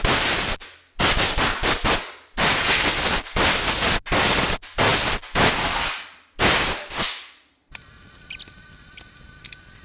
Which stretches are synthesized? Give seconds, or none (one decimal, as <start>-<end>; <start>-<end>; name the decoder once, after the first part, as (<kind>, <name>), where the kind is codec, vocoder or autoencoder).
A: none